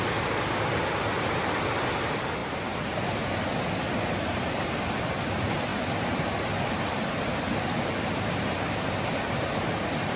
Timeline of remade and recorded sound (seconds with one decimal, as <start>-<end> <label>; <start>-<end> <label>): 0.0-10.2 recorded